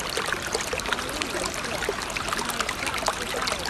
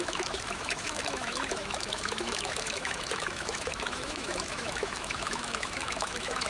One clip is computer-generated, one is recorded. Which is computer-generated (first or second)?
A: second